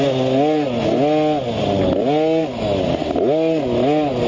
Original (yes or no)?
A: yes